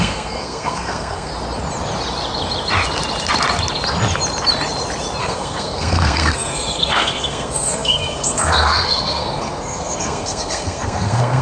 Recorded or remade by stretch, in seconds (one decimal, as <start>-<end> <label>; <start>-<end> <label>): 0.0-1.3 remade; 1.3-5.2 recorded; 5.2-11.4 remade